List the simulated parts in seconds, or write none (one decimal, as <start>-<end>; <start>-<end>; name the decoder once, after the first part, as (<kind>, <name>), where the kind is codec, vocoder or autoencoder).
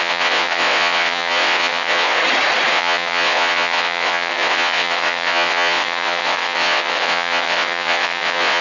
0.0-2.2 (vocoder, WaveNeXt); 2.7-8.6